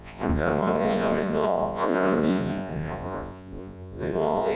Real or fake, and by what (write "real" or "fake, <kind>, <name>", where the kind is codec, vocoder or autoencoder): fake, vocoder, Vocos